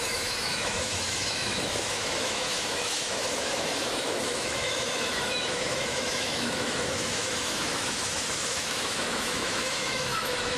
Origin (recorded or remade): remade